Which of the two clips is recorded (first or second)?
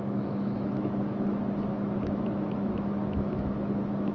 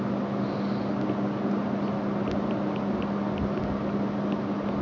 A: second